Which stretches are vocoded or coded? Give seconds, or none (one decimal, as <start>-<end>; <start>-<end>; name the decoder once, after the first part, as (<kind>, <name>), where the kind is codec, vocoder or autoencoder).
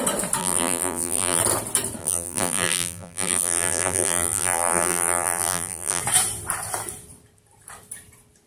0.4-1.4 (vocoder, BigVGAN v2); 2.0-6.0